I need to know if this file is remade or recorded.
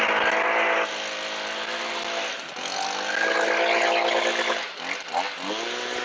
recorded